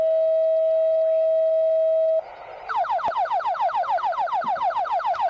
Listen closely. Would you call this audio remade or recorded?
recorded